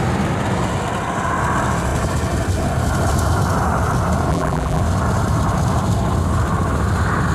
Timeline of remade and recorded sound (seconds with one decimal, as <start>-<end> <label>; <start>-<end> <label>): 0.0-4.3 recorded; 4.3-4.8 remade; 4.8-7.3 recorded